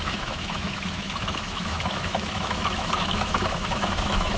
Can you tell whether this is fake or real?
fake